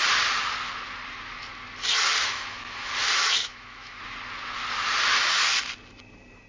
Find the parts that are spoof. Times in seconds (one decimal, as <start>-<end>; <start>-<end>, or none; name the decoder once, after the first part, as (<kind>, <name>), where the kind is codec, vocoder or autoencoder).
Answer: 2.3-2.9 (autoencoder, DAC-VAE); 3.4-4.0